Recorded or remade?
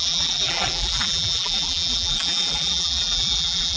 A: remade